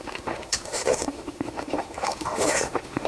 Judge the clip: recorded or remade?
remade